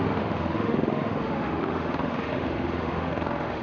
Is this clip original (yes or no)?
no